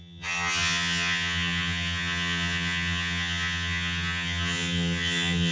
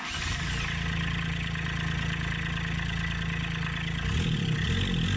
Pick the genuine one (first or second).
second